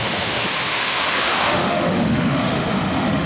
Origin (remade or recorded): remade